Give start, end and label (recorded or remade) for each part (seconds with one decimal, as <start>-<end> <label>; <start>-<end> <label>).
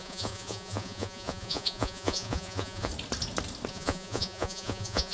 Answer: 0.0-2.9 remade; 2.9-3.7 recorded; 3.7-5.1 remade